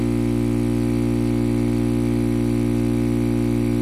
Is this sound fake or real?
real